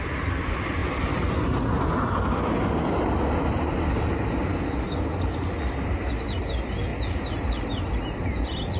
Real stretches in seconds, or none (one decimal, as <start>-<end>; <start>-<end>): 0.0-8.8

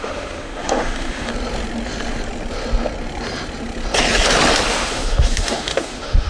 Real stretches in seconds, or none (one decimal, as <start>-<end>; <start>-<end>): 1.3-4.7

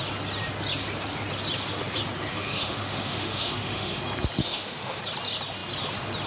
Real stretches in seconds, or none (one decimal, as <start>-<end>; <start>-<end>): 0.0-2.3; 4.0-4.4; 5.0-6.3

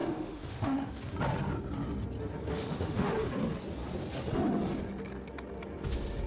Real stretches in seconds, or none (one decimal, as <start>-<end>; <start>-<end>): 0.9-2.5; 3.1-6.3